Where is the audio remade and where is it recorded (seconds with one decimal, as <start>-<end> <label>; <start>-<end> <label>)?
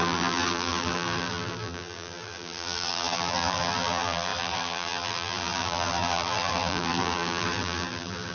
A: 0.0-8.3 remade